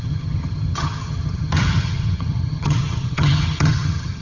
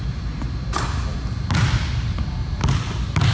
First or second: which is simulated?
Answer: first